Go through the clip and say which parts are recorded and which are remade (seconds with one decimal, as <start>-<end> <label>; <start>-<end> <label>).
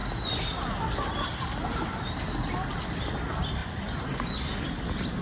0.0-5.2 recorded